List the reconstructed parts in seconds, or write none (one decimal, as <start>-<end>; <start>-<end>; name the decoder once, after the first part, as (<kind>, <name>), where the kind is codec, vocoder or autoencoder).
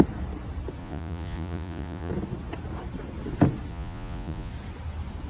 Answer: 0.8-2.1 (vocoder, Vocos); 3.7-4.5